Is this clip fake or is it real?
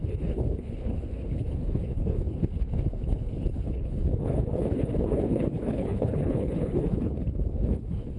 fake